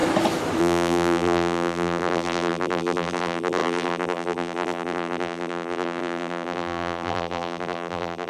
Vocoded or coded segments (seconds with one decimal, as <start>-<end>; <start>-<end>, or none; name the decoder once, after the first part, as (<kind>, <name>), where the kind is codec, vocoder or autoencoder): 0.6-8.3 (vocoder, BigVGAN v2)